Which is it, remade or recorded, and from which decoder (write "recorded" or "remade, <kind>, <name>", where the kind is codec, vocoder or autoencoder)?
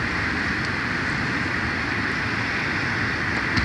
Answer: recorded